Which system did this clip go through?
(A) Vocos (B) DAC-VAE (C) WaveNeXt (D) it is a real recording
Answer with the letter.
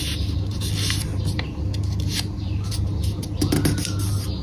D